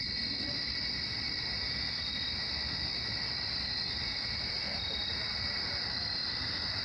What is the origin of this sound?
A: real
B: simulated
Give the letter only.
A